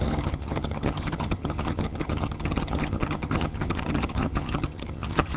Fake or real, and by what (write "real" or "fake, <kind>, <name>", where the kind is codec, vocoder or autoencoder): fake, vocoder, HiFi-GAN